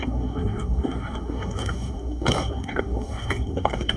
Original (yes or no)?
no